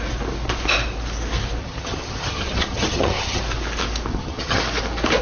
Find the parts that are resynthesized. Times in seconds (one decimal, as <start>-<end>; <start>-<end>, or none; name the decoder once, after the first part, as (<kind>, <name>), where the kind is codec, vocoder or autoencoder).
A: 1.6-3.4 (vocoder, HiFi-GAN); 4.1-4.6